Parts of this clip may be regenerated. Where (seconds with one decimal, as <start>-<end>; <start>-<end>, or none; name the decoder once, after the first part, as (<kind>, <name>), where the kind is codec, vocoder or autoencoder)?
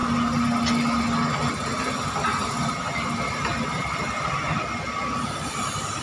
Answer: none